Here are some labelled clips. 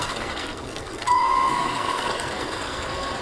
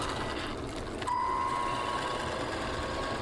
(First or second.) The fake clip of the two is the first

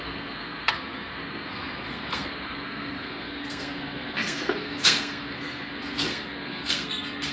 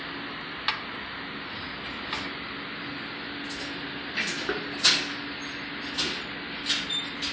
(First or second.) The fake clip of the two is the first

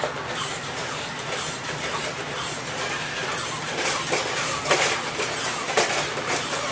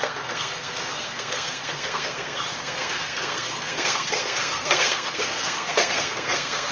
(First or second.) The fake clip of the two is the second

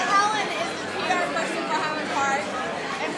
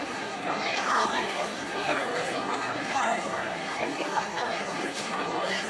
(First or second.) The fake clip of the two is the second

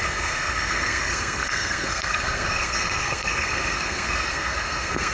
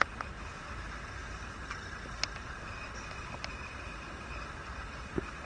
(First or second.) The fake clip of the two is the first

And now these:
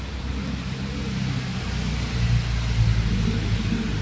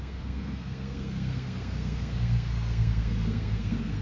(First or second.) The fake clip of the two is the second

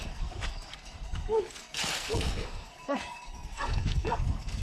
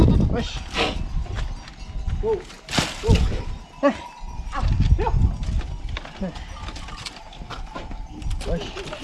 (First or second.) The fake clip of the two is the first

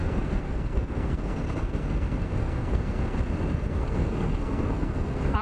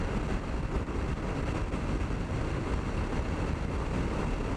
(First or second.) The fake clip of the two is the first